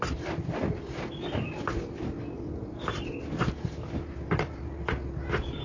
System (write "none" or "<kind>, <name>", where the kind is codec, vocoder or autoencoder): none